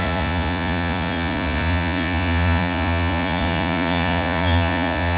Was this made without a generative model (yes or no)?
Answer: no